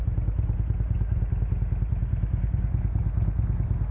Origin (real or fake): real